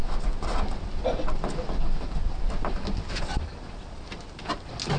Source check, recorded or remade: recorded